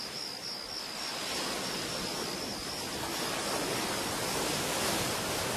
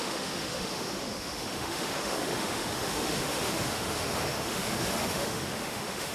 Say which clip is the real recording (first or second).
first